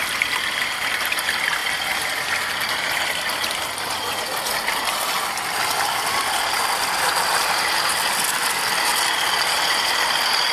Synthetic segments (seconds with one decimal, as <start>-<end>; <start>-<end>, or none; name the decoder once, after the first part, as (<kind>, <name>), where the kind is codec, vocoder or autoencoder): none